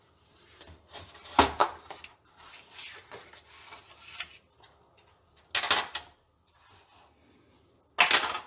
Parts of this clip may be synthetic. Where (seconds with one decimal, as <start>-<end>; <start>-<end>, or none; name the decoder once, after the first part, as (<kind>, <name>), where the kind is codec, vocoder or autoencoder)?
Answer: none